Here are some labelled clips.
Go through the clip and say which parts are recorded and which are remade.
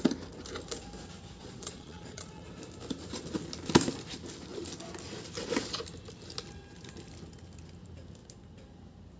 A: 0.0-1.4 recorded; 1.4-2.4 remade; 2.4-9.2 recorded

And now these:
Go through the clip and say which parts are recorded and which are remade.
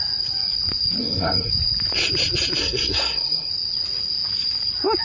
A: 0.0-1.0 recorded; 1.0-1.5 remade; 1.5-2.6 recorded; 2.6-3.5 remade; 3.5-5.0 recorded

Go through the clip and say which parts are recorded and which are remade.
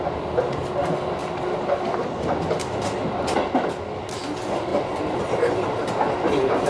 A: 0.0-6.7 recorded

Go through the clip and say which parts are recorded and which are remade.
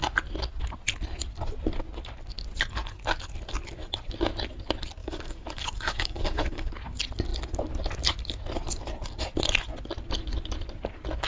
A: 0.0-5.0 recorded; 5.0-6.7 remade; 6.7-11.3 recorded